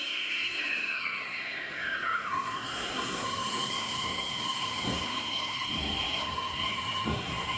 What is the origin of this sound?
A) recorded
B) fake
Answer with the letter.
B